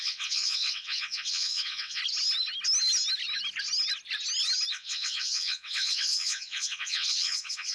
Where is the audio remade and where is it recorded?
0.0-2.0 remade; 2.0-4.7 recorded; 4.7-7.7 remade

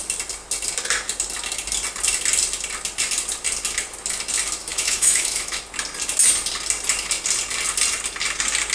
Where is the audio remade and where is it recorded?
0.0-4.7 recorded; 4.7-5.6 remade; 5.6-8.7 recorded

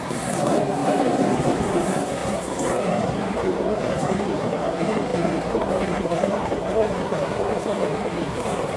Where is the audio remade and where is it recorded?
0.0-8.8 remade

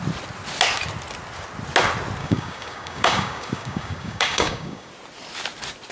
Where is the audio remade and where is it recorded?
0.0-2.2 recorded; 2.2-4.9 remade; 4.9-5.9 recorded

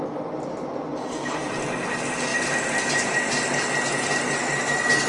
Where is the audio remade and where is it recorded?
0.0-5.1 recorded

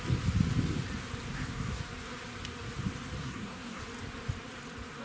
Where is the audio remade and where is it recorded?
0.0-1.3 recorded; 1.3-1.8 remade; 1.8-3.2 recorded; 3.2-3.8 remade; 3.8-5.0 recorded